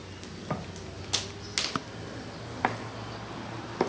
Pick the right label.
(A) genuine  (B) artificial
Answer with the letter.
A